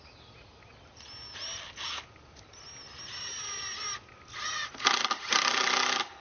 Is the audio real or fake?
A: real